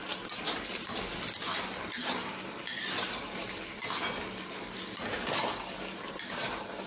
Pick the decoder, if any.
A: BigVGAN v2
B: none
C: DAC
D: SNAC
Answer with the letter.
B